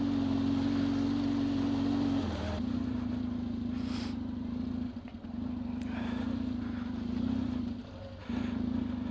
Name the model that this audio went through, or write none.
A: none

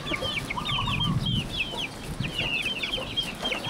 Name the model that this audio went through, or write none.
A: none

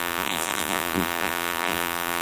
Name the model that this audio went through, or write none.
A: vocoder, BigVGAN v2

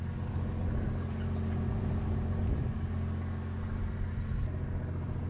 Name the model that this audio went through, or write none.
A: none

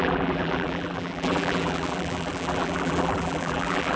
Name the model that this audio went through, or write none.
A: vocoder, BigVGAN v2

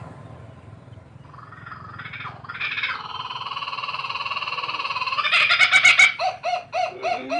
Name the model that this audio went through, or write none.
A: vocoder, BigVGAN v2